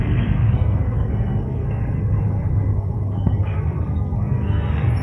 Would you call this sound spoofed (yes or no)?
yes